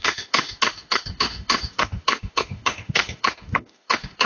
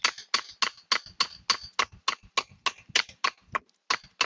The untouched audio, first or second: second